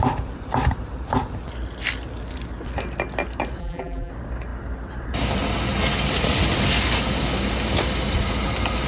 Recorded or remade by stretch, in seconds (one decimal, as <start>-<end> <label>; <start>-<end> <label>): 0.0-3.6 recorded; 3.6-4.1 remade; 4.1-8.9 recorded